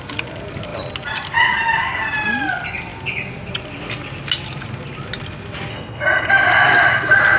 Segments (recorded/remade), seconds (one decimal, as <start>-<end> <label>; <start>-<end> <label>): 0.0-5.7 recorded; 5.7-6.3 remade; 6.3-7.4 recorded